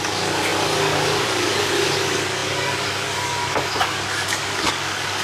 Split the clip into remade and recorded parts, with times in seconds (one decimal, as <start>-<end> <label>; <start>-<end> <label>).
0.0-5.2 remade